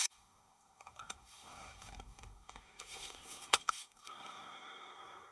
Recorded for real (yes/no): no